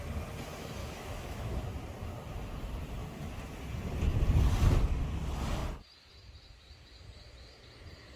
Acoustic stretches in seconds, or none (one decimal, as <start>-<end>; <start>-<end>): 0.0-0.8; 1.6-8.2